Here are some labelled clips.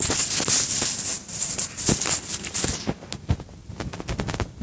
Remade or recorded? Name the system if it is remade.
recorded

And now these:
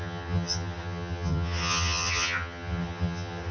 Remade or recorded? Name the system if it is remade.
remade, vocoder, HiFi-GAN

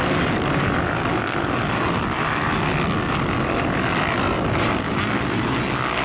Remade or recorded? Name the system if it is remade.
recorded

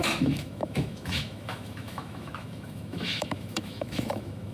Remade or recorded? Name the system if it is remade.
remade, autoencoder, DAC-VAE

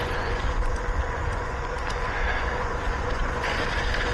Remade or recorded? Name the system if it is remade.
remade, vocoder, Vocos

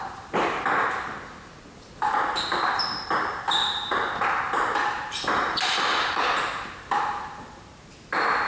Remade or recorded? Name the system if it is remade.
remade, vocoder, BigVGAN v2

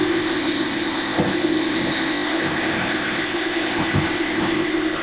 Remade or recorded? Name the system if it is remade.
remade, codec, ZipCodec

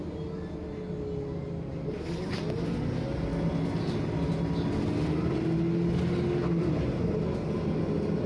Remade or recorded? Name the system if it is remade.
recorded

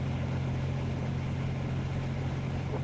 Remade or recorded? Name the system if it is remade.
recorded